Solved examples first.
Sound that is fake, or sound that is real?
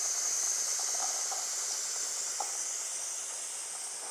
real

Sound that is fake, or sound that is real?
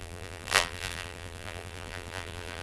fake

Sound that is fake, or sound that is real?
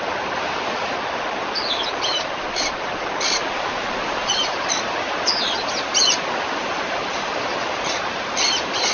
real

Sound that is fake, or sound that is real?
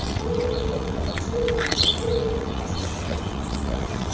fake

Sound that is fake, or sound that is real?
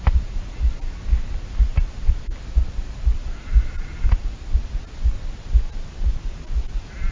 real